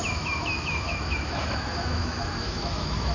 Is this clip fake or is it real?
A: fake